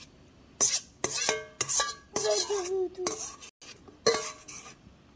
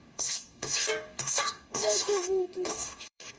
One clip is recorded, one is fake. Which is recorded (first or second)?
first